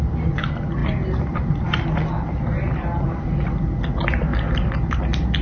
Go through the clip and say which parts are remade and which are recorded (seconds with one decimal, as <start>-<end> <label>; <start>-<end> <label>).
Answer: 0.0-5.4 recorded